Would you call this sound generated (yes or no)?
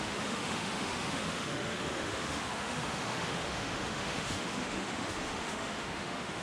yes